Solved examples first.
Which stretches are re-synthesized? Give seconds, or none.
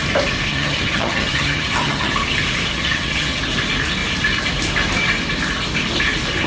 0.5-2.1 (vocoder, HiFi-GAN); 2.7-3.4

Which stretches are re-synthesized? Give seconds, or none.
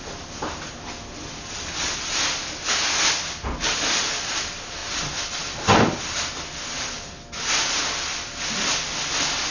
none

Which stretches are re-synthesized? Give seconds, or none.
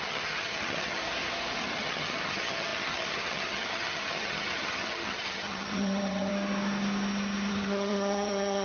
0.0-1.0 (vocoder, HiFi-GAN); 1.6-6.3; 7.5-8.6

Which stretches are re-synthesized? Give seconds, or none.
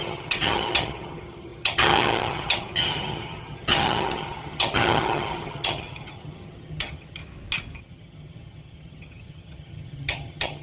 0.0-7.2 (vocoder, HiFi-GAN); 7.8-10.6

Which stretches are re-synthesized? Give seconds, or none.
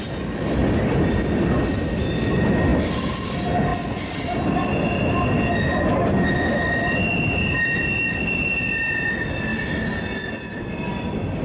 none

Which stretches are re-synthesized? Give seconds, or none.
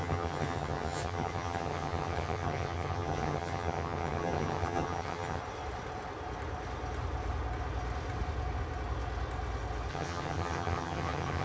0.0-5.4 (vocoder, HiFi-GAN); 9.9-11.4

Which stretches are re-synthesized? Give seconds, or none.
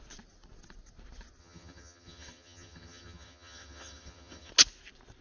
1.4-4.5 (vocoder, HiFi-GAN)